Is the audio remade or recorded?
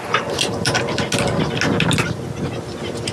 recorded